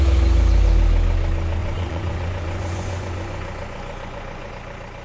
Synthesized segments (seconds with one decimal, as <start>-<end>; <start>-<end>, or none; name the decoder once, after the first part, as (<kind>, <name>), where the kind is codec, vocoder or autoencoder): 1.6-4.5 (vocoder, Vocos)